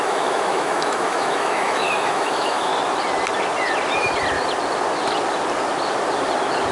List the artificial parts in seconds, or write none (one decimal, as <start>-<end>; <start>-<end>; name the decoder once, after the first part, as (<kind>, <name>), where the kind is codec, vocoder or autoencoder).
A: 0.0-2.7 (autoencoder, DAC-VAE)